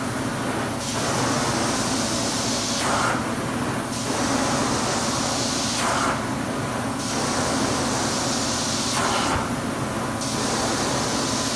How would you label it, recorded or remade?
recorded